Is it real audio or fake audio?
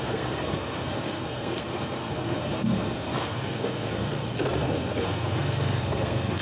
fake